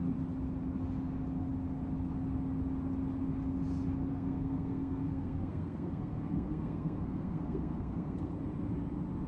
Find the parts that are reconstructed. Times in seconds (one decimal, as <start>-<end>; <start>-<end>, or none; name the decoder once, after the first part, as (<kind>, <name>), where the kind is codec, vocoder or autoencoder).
4.1-8.3 (codec, SNAC)